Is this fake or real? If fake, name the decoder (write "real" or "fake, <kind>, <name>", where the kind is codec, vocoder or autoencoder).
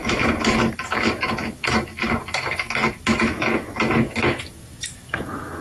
fake, autoencoder, DAC-VAE